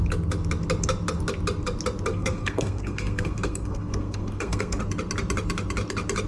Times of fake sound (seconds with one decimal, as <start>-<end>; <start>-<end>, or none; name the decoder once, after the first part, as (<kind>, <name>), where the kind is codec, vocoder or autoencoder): 2.1-4.8 (codec, SNAC)